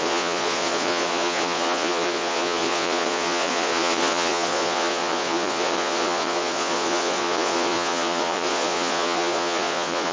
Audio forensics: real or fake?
fake